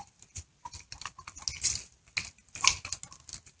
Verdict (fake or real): real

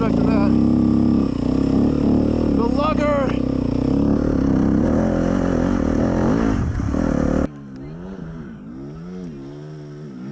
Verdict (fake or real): real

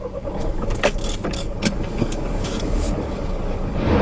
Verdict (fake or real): fake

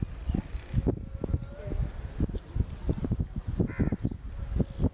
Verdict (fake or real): real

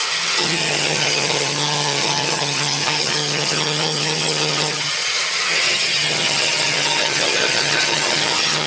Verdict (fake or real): fake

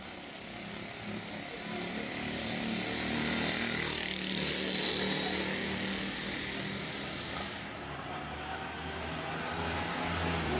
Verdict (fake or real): real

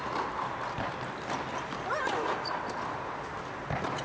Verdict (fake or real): real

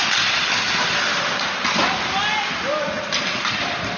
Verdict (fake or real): real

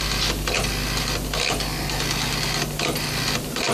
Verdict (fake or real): fake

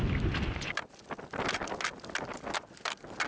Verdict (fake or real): real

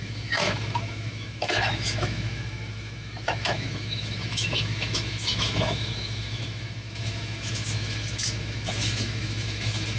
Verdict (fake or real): fake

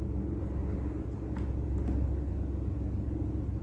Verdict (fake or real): real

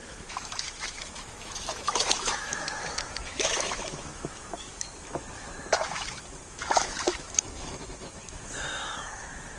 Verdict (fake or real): fake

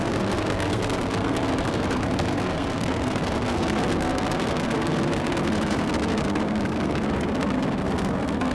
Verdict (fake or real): fake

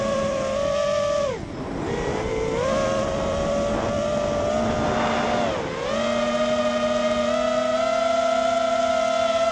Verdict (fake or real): real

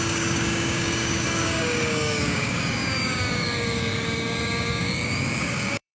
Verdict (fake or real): fake